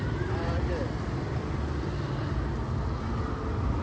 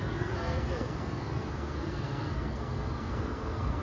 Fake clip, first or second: second